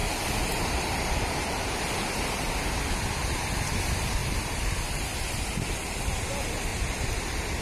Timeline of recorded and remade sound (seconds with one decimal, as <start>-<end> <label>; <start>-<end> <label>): 0.0-1.4 remade; 1.4-4.2 recorded; 4.2-4.8 remade; 4.8-6.7 recorded; 6.7-7.6 remade